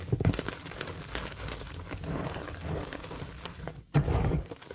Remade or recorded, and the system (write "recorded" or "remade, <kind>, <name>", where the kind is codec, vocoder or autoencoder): remade, codec, DAC